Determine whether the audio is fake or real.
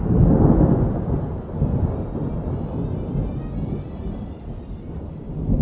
real